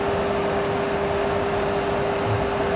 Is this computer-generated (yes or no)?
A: no